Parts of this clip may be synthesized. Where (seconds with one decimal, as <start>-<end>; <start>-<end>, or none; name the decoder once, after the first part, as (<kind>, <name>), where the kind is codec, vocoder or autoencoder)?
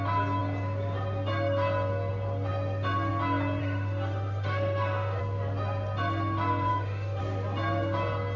3.6-5.2 (autoencoder, DAC-VAE); 6.7-7.2